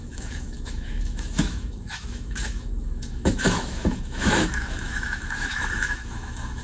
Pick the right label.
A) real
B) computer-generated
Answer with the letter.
B